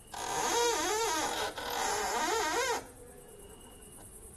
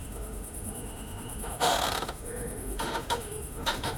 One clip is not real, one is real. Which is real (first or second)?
first